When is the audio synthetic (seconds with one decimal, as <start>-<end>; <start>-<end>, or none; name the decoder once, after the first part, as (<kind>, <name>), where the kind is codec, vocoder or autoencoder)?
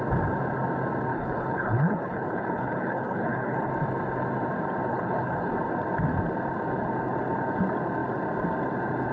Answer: 1.1-3.7 (codec, HILCodec); 4.9-5.5